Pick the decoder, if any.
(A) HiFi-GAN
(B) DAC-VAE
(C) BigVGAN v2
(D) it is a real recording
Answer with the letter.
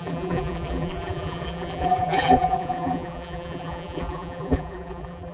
C